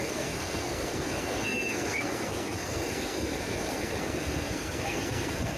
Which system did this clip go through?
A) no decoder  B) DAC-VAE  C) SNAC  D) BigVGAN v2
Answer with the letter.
C